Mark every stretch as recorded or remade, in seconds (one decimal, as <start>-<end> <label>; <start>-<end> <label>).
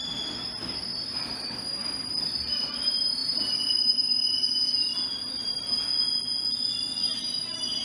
0.0-0.9 recorded; 0.9-2.7 remade; 2.7-3.2 recorded; 3.2-3.8 remade; 3.8-7.8 recorded